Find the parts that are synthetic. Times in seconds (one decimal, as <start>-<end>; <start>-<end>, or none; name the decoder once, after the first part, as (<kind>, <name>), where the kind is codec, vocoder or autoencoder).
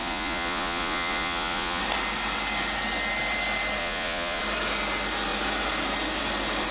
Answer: 0.0-1.8 (vocoder, Vocos); 3.8-4.4